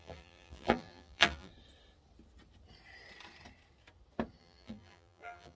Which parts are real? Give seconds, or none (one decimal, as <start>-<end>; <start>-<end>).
1.5-4.4